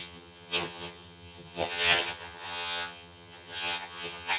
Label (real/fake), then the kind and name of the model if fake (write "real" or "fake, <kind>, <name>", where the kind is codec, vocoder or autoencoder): fake, vocoder, HiFi-GAN